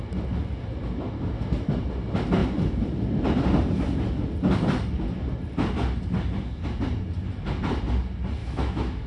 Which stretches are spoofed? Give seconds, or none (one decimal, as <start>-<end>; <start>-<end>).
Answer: 8.4-9.1